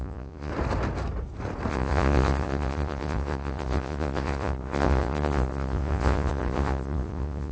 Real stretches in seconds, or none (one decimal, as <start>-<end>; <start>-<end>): 0.5-1.7